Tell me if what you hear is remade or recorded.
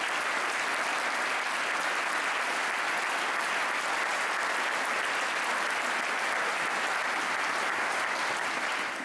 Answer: recorded